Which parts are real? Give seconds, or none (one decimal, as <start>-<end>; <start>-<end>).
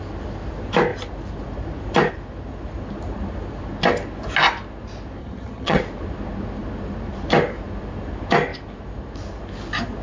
0.0-5.2; 5.8-10.0